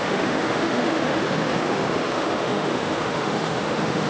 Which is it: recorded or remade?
remade